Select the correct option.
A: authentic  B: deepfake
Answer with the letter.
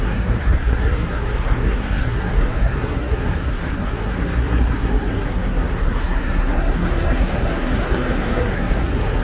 B